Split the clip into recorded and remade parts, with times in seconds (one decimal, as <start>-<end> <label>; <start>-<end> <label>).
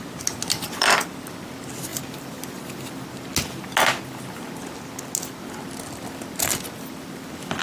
0.0-7.6 recorded